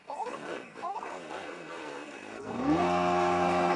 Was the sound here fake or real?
fake